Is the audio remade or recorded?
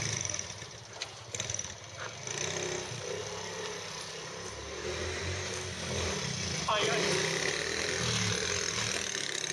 recorded